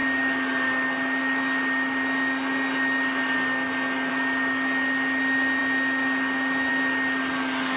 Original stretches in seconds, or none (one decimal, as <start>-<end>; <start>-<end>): 0.0-7.8